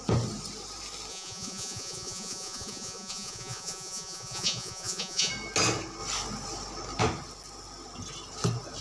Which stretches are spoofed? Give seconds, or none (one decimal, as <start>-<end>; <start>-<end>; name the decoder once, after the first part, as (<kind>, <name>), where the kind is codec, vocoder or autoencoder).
1.1-5.3 (vocoder, Vocos)